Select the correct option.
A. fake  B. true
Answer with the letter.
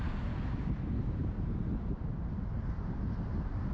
B